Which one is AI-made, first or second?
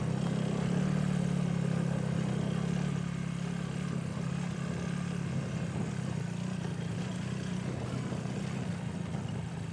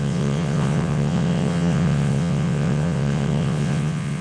second